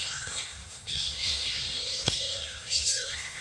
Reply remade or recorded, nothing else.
remade